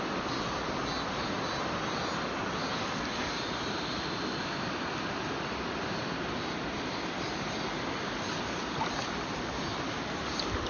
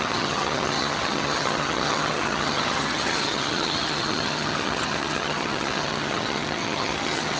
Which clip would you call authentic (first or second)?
first